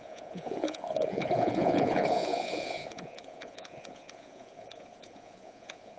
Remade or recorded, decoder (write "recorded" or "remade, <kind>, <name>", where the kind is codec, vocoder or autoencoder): remade, vocoder, Vocos